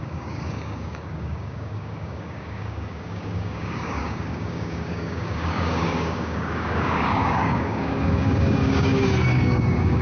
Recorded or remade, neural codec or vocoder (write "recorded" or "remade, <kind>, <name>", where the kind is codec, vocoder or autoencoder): remade, codec, DAC